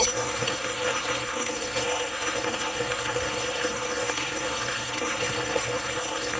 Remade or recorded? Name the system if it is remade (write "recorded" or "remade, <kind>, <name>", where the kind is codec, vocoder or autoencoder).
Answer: remade, codec, SNAC